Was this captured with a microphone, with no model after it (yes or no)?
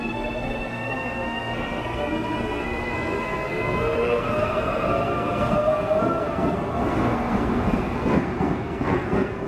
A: no